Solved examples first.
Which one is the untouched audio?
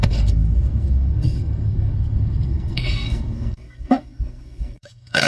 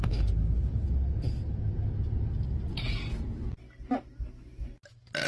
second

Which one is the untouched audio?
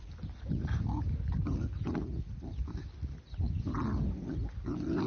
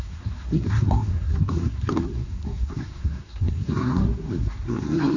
first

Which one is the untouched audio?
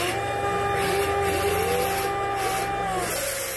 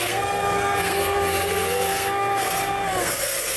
first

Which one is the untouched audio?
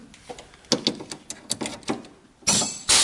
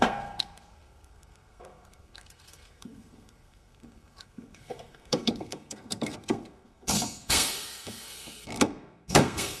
first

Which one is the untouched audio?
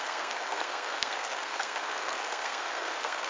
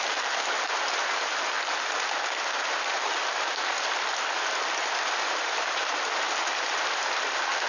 second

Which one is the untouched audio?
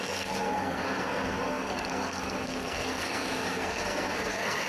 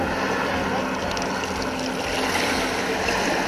second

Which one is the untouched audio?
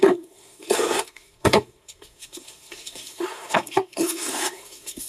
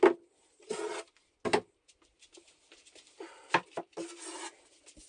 second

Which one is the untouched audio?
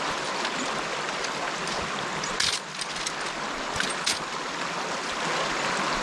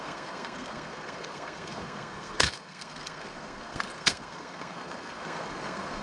first